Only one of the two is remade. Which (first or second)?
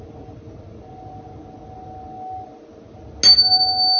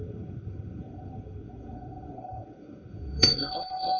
second